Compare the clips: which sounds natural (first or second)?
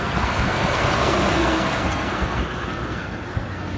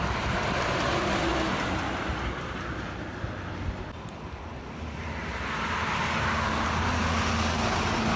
second